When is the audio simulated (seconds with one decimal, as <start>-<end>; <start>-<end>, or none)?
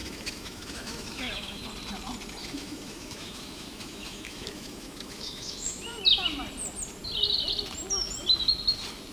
0.0-1.6; 2.4-5.8